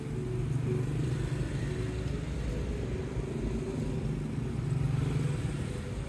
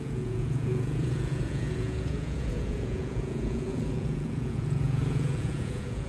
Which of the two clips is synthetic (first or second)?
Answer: second